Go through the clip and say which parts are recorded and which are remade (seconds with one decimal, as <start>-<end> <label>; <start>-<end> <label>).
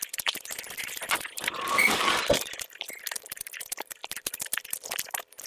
0.0-5.5 remade